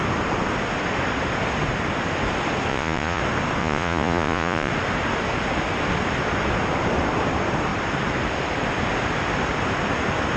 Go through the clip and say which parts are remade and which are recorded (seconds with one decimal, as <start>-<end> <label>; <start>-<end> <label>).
0.0-2.7 recorded; 2.7-3.2 remade; 3.2-3.6 recorded; 3.6-4.7 remade; 4.7-10.4 recorded